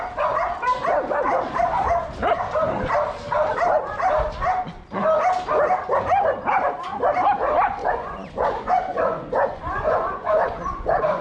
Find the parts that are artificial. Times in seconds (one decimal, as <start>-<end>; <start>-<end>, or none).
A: 7.8-11.2